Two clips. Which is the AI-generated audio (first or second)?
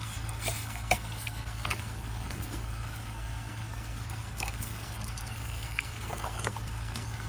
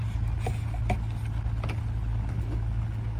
first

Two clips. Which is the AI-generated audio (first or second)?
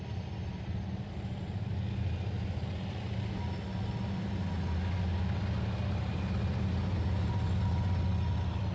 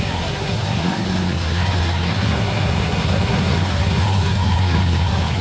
second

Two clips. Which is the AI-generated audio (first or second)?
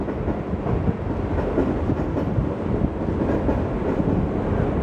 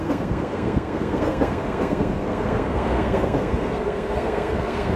second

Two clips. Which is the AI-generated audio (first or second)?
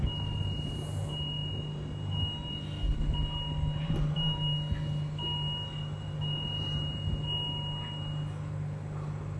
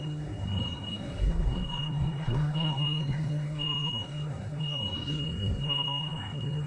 second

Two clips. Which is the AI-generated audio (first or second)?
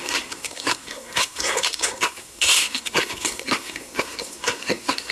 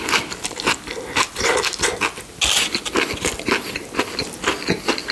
first